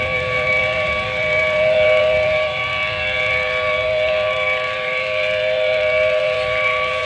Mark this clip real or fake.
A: fake